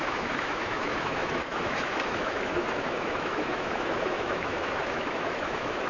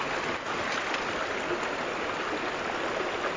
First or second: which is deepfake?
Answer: first